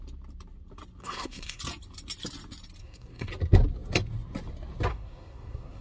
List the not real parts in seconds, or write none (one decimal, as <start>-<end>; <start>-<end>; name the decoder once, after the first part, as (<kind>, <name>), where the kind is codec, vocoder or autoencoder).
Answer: 1.0-1.6 (codec, SNAC); 2.8-3.3; 4.9-5.8